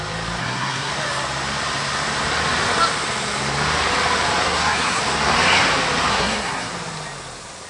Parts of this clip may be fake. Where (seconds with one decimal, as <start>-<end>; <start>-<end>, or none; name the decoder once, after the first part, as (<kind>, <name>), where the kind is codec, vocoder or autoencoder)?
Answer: 0.4-0.9 (codec, SNAC); 4.4-5.0; 6.1-6.7